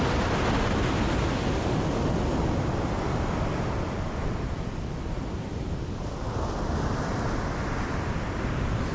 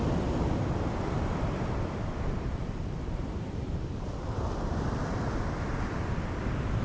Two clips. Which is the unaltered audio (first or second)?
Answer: first